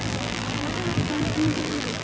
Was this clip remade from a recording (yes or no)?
yes